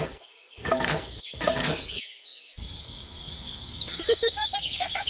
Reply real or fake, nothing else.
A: fake